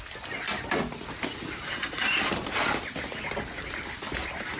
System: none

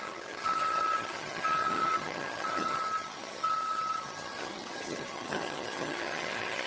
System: vocoder, HiFi-GAN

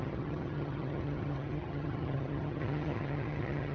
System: vocoder, HiFi-GAN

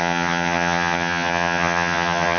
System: vocoder, HiFi-GAN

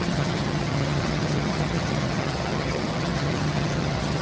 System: vocoder, HiFi-GAN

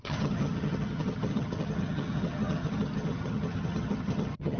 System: vocoder, HiFi-GAN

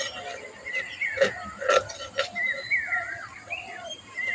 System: none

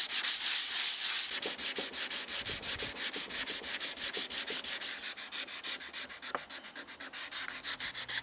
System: none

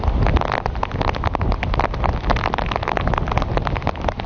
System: none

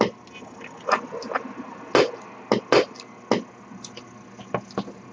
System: none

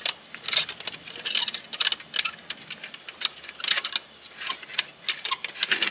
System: none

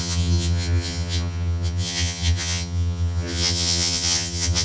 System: vocoder, HiFi-GAN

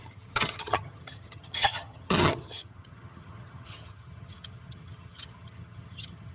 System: vocoder, HiFi-GAN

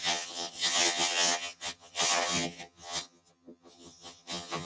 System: vocoder, HiFi-GAN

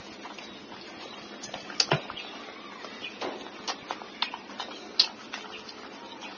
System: none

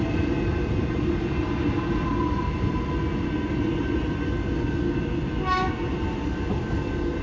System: none